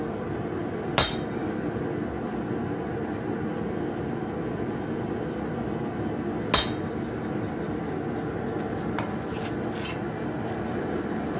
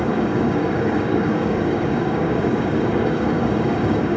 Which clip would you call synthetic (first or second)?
second